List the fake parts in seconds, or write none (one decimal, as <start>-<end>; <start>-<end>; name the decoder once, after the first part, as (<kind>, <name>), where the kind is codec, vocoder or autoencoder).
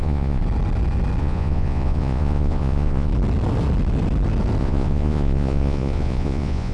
0.0-0.4 (vocoder, Vocos); 1.2-3.1; 4.6-6.7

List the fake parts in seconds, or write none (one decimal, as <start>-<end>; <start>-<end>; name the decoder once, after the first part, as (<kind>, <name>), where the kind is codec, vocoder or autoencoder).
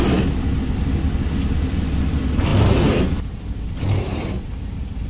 none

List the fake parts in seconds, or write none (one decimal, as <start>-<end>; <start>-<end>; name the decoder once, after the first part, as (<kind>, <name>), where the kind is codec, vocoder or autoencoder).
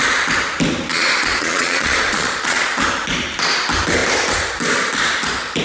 0.9-2.8 (vocoder, Vocos)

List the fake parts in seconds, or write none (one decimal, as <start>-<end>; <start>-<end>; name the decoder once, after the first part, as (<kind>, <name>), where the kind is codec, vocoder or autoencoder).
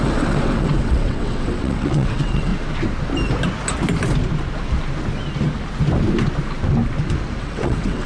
0.0-2.5 (vocoder, WaveNeXt); 7.4-8.1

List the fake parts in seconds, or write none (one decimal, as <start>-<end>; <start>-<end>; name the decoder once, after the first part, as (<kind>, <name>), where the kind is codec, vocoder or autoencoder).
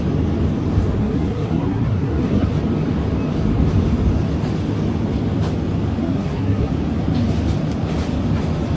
1.0-2.5 (codec, SNAC); 6.0-6.7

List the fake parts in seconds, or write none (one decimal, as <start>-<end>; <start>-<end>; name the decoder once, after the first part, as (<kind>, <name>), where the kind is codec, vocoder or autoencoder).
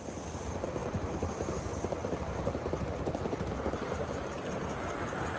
0.8-1.3 (vocoder, BigVGAN v2); 2.0-5.4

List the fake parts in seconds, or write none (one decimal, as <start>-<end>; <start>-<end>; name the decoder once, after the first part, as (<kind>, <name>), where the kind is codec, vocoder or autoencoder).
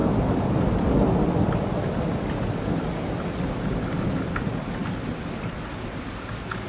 none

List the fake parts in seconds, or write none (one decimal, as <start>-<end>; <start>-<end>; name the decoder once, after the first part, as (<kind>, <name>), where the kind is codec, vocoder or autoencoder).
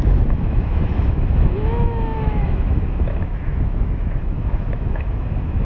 0.0-5.6 (autoencoder, DAC-VAE)